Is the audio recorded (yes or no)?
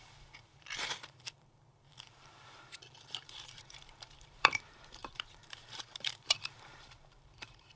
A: no